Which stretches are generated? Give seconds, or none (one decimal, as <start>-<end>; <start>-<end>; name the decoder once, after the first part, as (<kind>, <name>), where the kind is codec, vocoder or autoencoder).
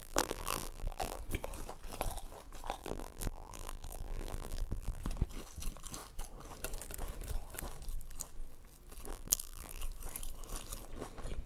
0.0-1.2 (vocoder, BigVGAN v2); 2.8-5.0; 9.1-9.8